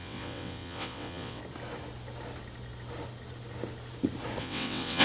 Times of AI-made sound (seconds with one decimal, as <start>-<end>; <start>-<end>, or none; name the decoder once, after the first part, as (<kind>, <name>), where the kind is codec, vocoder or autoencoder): 0.0-1.4 (vocoder, WaveNeXt); 4.4-5.0